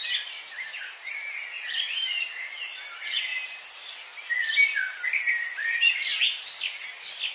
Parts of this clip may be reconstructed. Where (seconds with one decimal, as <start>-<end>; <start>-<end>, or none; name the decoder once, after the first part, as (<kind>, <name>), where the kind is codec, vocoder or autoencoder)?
0.4-1.0 (vocoder, BigVGAN v2)